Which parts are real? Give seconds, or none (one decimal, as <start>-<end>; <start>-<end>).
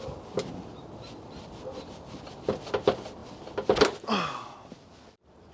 0.0-5.5